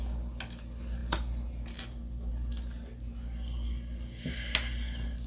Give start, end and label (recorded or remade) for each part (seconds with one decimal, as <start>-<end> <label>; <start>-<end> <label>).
0.0-5.3 recorded